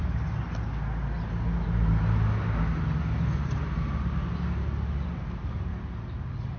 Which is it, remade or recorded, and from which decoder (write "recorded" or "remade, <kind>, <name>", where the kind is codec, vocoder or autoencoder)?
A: recorded